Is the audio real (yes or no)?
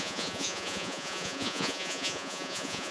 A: no